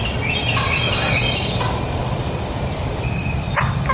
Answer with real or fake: fake